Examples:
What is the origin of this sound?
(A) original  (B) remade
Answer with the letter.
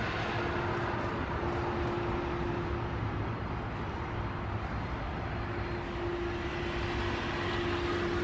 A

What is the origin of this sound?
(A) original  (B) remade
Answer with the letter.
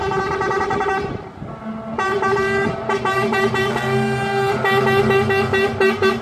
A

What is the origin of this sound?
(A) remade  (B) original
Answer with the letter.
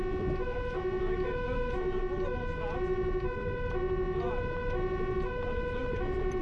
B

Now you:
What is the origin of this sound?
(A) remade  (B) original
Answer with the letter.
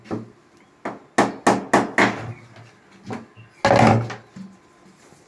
B